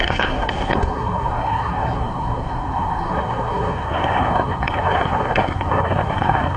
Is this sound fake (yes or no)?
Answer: yes